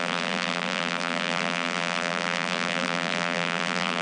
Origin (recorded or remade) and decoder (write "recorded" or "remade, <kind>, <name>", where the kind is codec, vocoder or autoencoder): remade, vocoder, BigVGAN v2